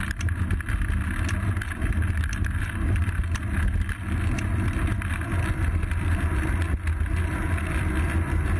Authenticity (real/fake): real